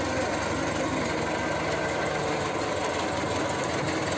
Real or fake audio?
real